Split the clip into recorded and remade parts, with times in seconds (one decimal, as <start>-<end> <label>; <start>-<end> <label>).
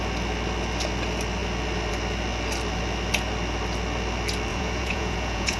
0.0-4.5 recorded; 4.5-5.6 remade